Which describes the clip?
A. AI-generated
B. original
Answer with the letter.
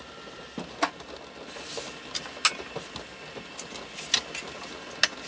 B